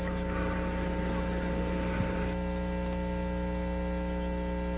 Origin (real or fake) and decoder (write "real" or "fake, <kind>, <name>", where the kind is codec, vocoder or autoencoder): real